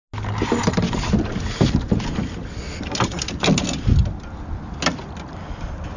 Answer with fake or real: real